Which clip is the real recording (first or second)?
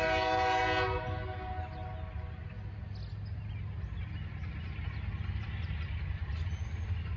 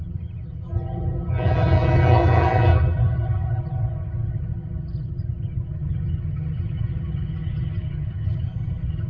first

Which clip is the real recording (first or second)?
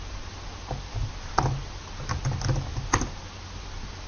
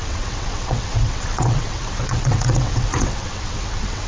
first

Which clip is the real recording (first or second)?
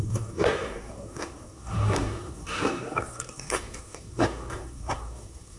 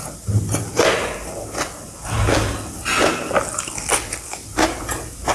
second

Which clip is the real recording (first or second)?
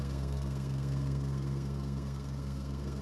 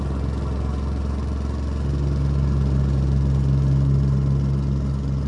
second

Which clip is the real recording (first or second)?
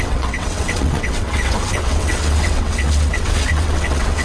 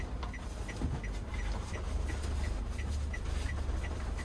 second